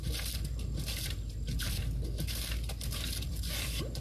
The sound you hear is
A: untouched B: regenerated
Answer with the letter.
A